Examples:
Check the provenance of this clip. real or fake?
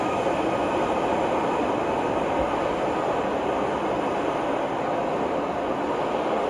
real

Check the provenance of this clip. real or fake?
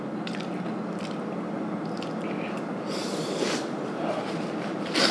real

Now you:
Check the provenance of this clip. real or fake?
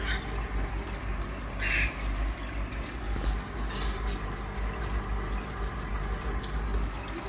real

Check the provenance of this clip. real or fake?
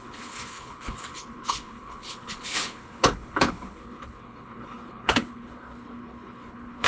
fake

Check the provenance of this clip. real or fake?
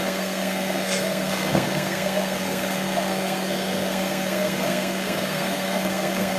fake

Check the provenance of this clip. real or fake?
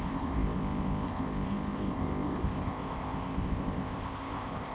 fake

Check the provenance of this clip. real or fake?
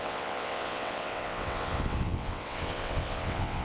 fake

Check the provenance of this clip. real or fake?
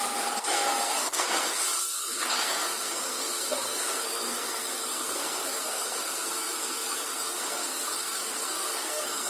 fake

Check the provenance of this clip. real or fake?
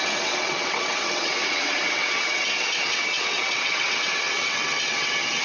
fake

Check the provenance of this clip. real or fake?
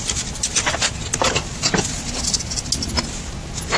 real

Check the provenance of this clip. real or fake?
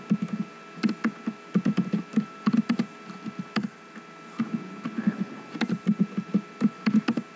real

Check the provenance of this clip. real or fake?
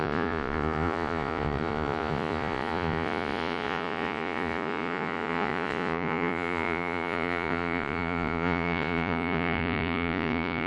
fake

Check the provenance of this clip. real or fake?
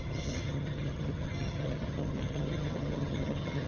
fake